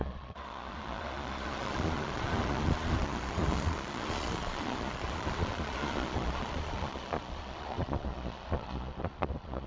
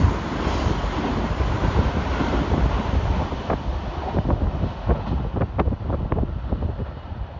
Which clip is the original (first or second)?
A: second